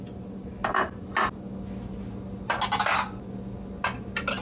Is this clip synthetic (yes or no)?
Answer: no